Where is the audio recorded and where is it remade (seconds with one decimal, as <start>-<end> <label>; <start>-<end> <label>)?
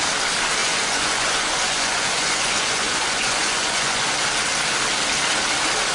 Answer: 0.0-0.6 recorded; 0.6-4.1 remade; 4.1-5.9 recorded